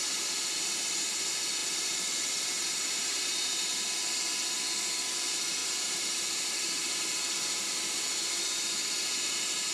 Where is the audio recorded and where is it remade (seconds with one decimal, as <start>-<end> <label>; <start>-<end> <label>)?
0.0-1.6 recorded; 1.6-3.4 remade; 3.4-5.6 recorded; 5.6-7.1 remade; 7.1-9.7 recorded